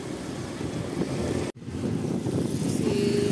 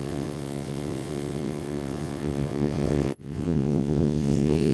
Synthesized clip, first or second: second